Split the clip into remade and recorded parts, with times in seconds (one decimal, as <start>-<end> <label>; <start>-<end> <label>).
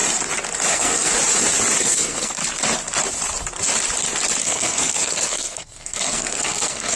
0.0-0.7 recorded; 0.7-1.1 remade; 1.1-1.8 recorded; 1.8-2.4 remade; 2.4-4.4 recorded; 4.4-7.0 remade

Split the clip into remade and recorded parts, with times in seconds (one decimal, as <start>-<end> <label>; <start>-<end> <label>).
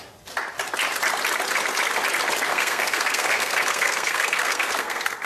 0.0-2.5 recorded; 2.5-5.3 remade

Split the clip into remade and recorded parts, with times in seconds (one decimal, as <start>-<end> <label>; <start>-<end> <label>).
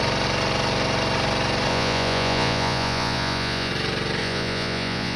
0.0-1.7 recorded; 1.7-3.7 remade; 3.7-4.2 recorded; 4.2-5.2 remade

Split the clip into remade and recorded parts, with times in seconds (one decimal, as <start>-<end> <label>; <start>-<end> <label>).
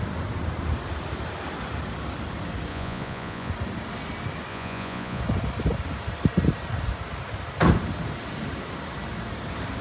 0.0-2.7 recorded; 2.7-3.5 remade; 3.5-4.5 recorded; 4.5-5.2 remade; 5.2-9.8 recorded